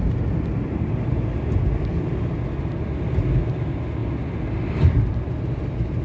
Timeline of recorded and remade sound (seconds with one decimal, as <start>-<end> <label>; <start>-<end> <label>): 0.0-6.0 recorded